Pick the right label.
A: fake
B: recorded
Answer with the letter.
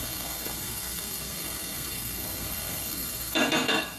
A